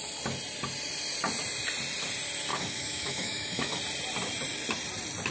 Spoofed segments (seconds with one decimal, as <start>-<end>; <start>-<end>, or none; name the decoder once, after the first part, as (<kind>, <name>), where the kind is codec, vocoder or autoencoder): 2.5-3.8 (autoencoder, DAC-VAE)